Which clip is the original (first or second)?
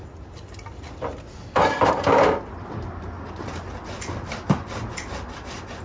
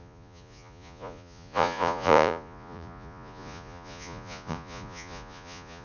first